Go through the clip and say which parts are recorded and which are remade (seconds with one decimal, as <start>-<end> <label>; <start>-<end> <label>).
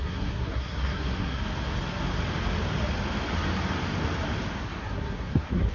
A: 0.0-1.4 remade; 1.4-4.8 recorded; 4.8-5.7 remade